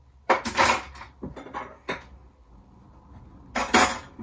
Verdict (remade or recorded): recorded